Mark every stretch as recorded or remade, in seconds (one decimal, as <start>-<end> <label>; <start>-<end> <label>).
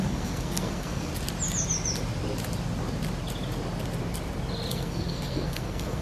0.0-1.1 remade; 1.1-4.7 recorded; 4.7-6.0 remade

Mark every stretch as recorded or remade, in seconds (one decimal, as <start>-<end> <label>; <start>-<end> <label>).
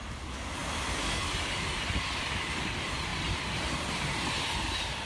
0.0-5.1 recorded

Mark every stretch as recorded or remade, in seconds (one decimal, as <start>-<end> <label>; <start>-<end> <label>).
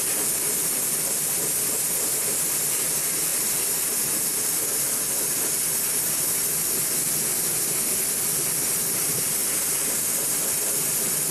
0.0-11.3 recorded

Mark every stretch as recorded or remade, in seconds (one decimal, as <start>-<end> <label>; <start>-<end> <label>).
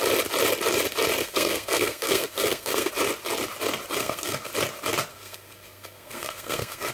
0.0-1.2 recorded; 1.2-2.9 remade; 2.9-4.0 recorded; 4.0-4.5 remade; 4.5-5.1 recorded; 5.1-6.9 remade